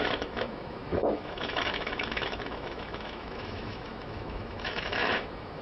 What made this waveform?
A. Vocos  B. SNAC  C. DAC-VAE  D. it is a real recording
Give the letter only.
C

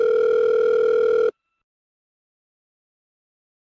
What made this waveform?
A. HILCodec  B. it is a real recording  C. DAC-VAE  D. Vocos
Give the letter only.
B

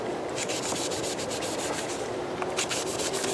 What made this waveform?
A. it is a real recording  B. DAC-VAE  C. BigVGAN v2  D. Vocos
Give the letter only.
A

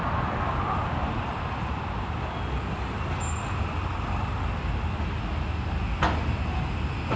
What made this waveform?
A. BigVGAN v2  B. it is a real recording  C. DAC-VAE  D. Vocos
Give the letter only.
B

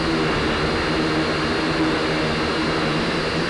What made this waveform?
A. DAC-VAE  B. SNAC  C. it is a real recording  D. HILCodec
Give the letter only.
C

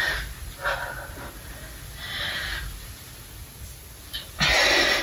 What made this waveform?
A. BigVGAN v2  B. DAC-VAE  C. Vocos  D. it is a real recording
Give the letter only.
D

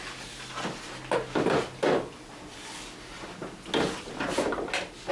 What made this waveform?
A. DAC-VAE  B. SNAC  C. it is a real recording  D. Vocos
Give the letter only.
C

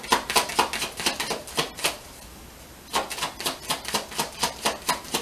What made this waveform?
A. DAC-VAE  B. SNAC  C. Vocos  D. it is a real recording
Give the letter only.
D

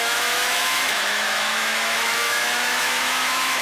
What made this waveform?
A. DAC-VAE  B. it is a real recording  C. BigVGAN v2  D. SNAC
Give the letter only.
A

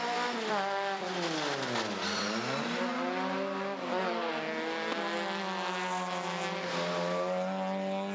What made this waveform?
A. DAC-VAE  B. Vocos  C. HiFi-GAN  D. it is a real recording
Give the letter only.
D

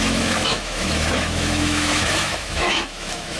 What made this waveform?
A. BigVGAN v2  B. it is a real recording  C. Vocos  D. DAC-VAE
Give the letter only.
D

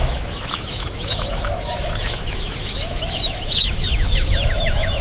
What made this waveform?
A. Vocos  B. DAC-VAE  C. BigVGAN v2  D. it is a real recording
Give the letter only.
B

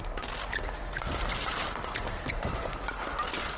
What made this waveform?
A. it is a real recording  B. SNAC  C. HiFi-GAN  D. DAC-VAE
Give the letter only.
A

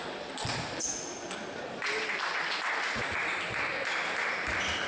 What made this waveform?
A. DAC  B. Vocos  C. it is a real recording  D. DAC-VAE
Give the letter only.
C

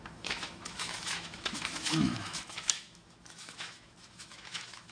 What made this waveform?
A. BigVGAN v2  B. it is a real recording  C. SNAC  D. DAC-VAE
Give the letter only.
D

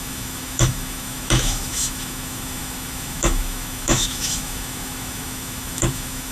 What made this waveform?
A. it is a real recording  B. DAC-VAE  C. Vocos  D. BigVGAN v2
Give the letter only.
B